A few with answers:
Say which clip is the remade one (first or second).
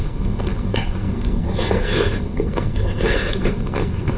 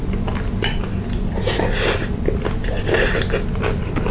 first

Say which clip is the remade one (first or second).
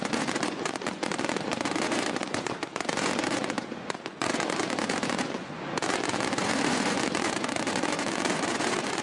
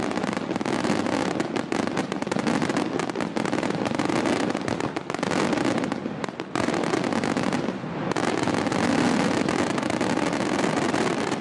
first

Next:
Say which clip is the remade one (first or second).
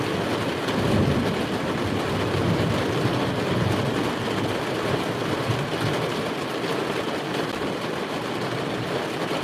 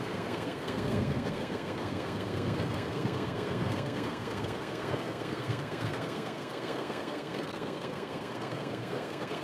second